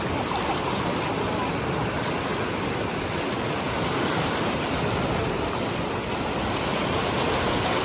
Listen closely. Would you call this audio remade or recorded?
recorded